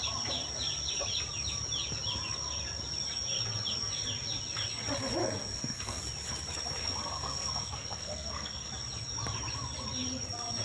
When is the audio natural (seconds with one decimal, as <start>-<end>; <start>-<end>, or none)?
0.0-5.2; 6.0-6.8; 8.7-10.6